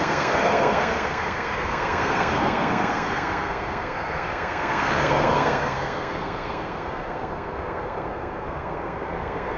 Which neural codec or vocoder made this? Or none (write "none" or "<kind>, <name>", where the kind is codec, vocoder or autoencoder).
codec, SNAC